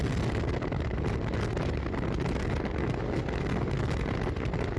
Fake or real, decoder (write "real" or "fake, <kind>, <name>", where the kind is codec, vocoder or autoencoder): real